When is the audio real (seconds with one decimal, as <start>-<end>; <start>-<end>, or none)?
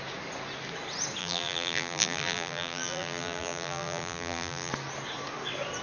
0.0-1.2; 4.7-5.8